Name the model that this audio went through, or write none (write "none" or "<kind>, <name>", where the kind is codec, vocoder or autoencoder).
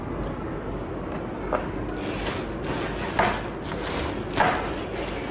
none